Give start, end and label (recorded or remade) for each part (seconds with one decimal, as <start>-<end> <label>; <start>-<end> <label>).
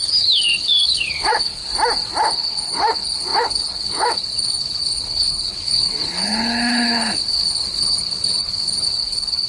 0.0-1.7 remade; 1.7-2.2 recorded; 2.2-9.5 remade